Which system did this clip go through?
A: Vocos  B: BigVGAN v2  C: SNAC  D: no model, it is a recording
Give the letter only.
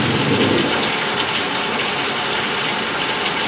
D